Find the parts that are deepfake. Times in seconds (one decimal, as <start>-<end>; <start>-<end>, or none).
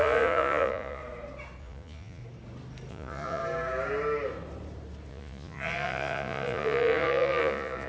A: 0.0-1.0; 1.6-2.2; 2.9-3.4; 5.1-7.9